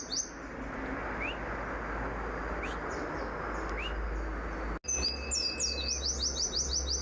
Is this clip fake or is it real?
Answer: real